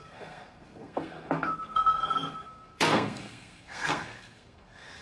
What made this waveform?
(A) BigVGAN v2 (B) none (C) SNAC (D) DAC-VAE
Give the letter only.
C